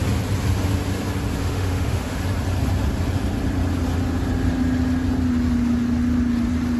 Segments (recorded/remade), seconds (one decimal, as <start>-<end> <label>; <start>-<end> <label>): 0.0-1.4 recorded; 1.4-2.2 remade; 2.2-6.8 recorded